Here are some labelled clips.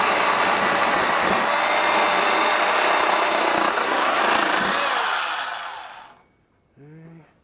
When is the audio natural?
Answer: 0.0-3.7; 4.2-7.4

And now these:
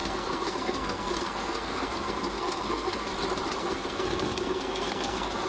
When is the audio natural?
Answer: 3.1-3.6

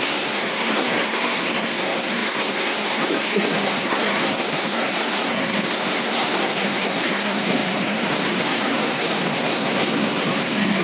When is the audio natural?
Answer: none

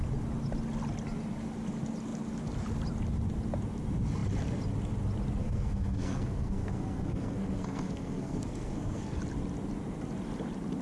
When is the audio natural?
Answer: 0.0-5.4; 9.2-10.8

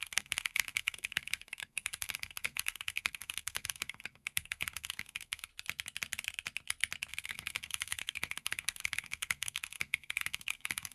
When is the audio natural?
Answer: 5.5-7.1

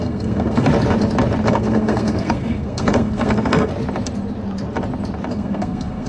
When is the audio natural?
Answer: 0.7-1.5; 3.7-5.3

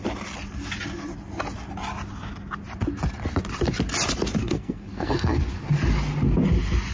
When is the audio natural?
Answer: 0.0-4.4; 5.4-6.9

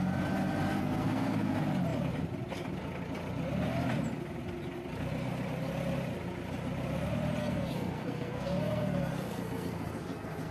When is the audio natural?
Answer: 0.0-0.7; 1.5-7.4